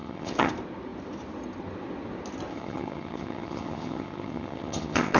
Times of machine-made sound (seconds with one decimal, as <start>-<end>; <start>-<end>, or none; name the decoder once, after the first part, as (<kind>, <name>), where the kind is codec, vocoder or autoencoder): 0.0-0.5 (vocoder, HiFi-GAN); 2.5-5.2